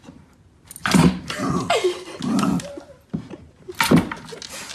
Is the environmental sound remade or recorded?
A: recorded